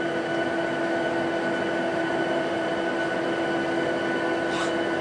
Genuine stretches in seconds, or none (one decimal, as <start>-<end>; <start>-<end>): 0.0-1.9; 2.7-5.0

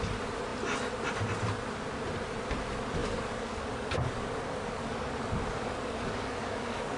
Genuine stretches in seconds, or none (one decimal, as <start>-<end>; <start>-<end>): 0.0-3.0